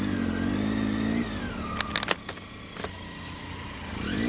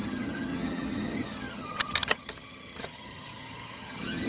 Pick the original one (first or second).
first